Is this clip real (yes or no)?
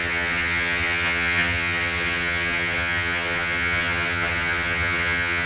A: no